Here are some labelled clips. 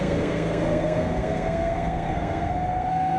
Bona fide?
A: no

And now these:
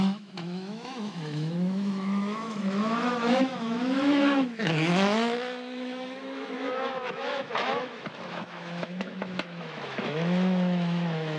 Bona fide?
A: no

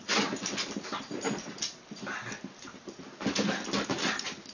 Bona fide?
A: yes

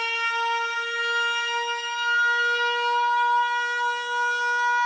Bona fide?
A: yes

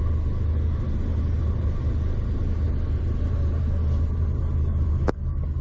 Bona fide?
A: yes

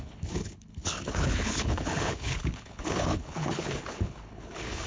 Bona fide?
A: no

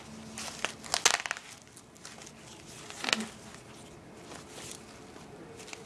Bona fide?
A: yes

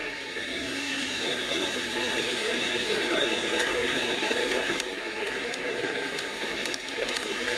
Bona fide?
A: no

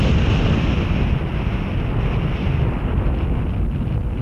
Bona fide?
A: yes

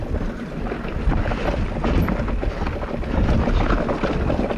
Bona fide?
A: yes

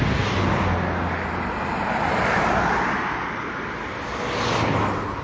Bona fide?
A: yes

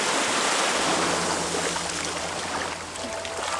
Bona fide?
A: yes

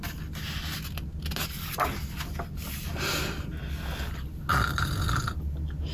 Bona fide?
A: yes